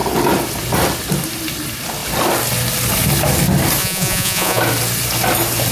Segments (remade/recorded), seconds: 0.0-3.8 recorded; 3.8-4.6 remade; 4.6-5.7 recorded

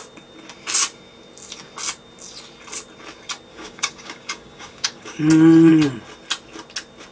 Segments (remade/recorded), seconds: 0.0-3.5 recorded; 3.5-5.2 remade; 5.2-7.1 recorded

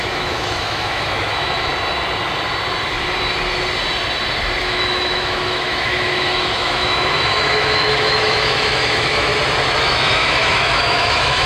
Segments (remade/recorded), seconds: 0.0-1.7 remade; 1.7-4.6 recorded; 4.6-9.3 remade; 9.3-9.8 recorded; 9.8-11.5 remade

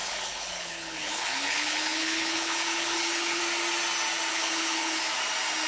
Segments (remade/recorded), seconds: 0.0-3.4 remade; 3.4-4.3 recorded; 4.3-5.0 remade; 5.0-5.7 recorded

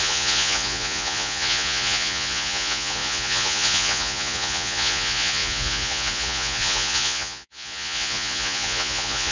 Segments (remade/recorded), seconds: 0.0-9.3 remade

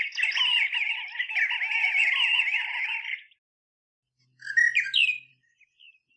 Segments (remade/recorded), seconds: 0.0-6.2 recorded